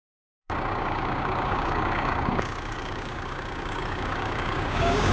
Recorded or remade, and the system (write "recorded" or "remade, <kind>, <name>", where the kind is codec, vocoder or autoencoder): remade, codec, DAC